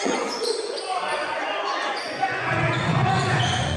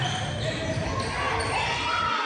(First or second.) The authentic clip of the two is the second